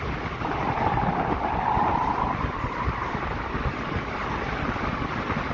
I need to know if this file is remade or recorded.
recorded